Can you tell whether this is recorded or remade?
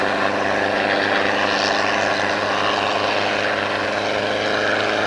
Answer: recorded